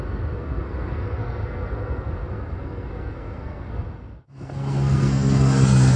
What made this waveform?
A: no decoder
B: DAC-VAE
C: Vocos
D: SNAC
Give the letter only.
D